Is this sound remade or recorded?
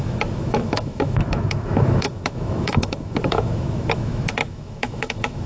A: remade